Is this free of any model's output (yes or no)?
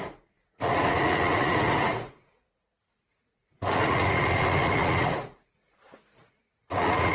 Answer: no